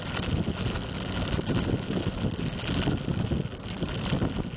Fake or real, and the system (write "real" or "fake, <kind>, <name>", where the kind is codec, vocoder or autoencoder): real